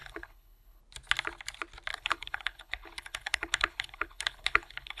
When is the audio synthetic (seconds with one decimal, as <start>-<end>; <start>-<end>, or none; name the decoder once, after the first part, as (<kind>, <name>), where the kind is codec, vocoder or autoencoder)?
0.0-0.8 (codec, HILCodec); 1.9-5.0